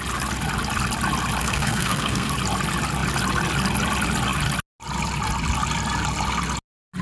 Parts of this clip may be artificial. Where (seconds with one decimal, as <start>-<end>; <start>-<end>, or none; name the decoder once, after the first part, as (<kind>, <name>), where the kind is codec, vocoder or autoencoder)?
1.4-2.3 (codec, SNAC)